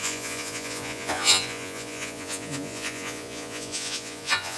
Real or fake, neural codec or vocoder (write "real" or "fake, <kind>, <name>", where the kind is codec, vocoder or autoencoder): fake, vocoder, Vocos